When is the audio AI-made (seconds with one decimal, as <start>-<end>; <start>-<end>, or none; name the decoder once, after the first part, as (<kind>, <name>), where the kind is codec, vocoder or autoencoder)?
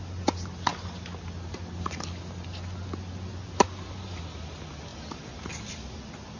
4.9-5.7 (vocoder, BigVGAN v2)